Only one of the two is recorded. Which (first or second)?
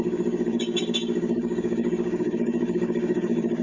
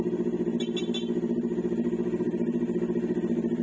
second